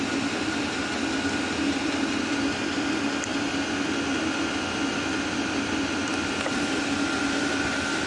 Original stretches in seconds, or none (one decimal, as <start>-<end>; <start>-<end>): 0.0-8.1